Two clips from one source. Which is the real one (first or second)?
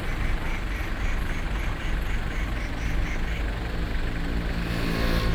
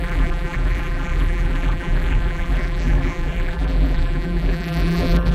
first